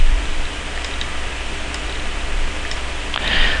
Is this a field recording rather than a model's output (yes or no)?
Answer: yes